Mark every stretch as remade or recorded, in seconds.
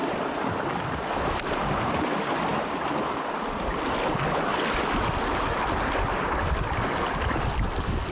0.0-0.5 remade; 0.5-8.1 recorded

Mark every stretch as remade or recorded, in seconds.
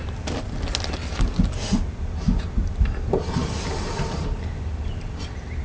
0.0-3.4 recorded; 3.4-4.9 remade; 4.9-5.6 recorded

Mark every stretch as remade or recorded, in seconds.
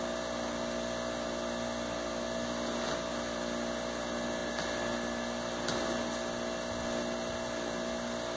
0.0-8.4 recorded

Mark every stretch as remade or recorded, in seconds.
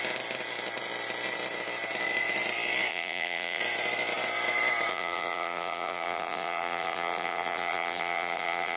0.0-2.9 recorded; 2.9-3.6 remade; 3.6-4.9 recorded; 4.9-8.8 remade